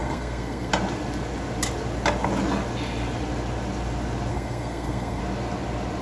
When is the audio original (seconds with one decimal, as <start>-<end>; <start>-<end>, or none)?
0.7-4.3; 5.2-6.0

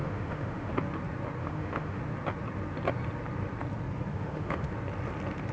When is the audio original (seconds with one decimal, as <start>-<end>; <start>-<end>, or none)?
0.7-1.4; 2.0-4.1; 4.7-5.5

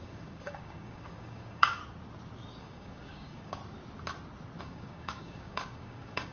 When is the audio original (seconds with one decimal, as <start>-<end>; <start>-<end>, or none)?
1.8-2.6; 3.6-4.6

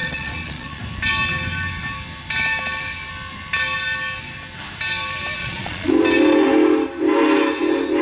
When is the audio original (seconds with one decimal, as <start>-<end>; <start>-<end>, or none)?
0.8-5.4; 5.9-8.0

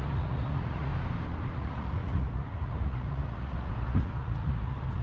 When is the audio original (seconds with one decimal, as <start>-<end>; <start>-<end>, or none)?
0.9-1.5

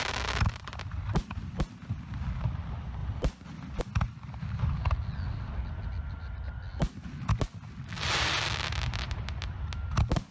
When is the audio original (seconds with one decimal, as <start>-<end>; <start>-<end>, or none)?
0.0-10.3